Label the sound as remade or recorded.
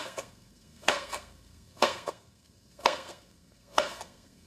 remade